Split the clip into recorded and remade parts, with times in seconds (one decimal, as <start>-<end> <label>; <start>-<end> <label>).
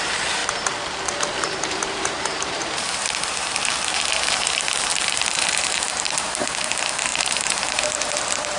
0.0-0.4 remade; 0.4-1.1 recorded; 1.1-8.6 remade